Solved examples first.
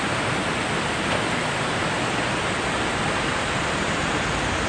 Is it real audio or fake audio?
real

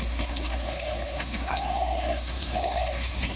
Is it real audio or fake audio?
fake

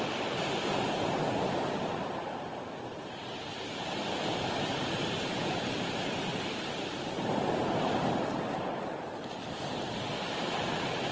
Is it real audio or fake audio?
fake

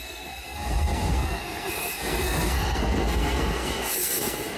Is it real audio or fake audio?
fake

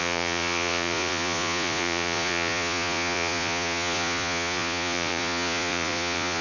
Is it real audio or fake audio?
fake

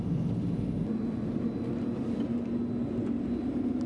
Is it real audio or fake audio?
real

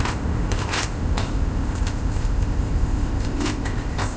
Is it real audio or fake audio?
fake